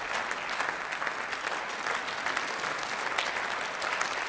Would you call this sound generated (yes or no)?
no